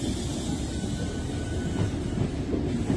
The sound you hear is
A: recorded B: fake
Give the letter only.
A